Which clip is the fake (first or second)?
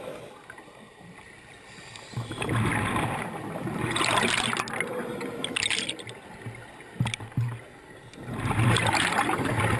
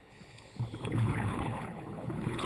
second